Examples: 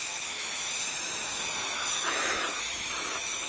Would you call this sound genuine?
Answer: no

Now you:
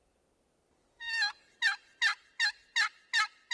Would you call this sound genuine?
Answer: yes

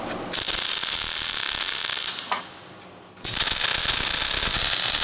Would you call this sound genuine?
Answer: yes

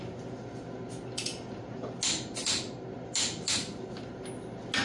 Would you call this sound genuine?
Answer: yes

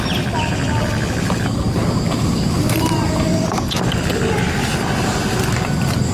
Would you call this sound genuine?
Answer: yes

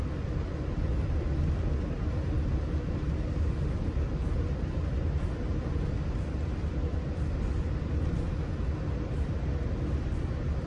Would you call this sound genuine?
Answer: yes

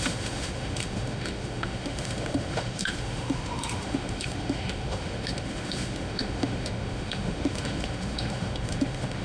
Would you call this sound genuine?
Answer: no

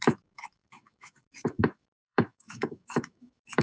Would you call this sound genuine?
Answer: no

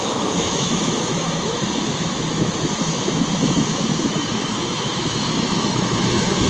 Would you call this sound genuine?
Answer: no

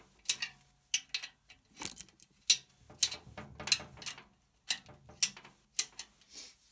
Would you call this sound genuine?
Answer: yes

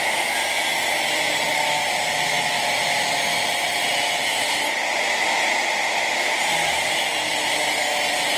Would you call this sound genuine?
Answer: yes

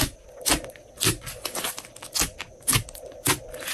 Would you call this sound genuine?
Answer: yes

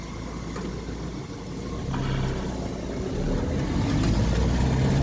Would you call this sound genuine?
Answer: yes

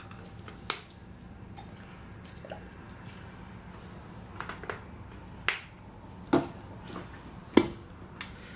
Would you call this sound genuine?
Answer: yes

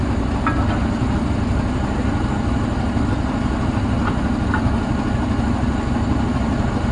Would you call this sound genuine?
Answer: yes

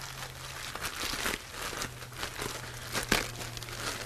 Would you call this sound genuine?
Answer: yes